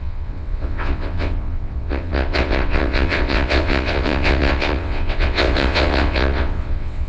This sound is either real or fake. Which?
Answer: fake